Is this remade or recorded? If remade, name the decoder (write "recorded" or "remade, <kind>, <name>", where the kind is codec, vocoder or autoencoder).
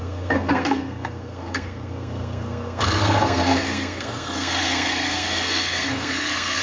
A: remade, codec, SNAC